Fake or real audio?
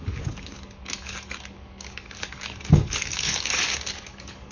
fake